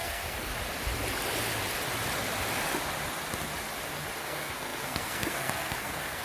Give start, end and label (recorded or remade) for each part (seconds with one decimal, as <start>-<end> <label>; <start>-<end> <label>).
0.0-0.5 remade; 0.5-4.2 recorded; 4.2-6.2 remade